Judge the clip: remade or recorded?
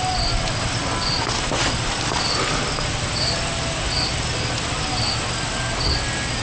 recorded